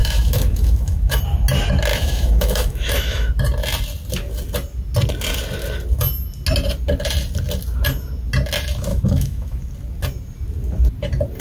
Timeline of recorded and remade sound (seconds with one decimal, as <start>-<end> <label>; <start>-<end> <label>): 0.0-1.2 remade; 1.2-1.9 recorded; 1.9-3.3 remade; 3.3-8.9 recorded; 8.9-9.6 remade; 9.6-11.4 recorded